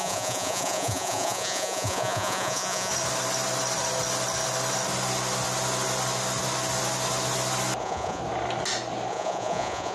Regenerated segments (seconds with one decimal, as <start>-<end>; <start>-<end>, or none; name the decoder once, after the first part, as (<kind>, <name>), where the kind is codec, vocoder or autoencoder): 0.0-2.9 (vocoder, Vocos); 7.8-8.2; 9.1-9.9

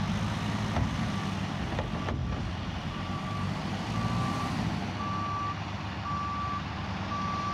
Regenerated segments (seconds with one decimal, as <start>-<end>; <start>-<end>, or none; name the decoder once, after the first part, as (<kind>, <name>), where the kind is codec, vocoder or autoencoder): 2.2-3.9 (vocoder, BigVGAN v2)

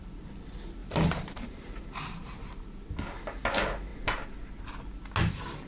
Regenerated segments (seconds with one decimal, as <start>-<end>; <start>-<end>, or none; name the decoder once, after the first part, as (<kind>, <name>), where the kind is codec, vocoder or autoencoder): 0.8-2.8 (vocoder, BigVGAN v2)